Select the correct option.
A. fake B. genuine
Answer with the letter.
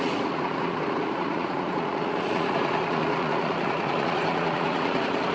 A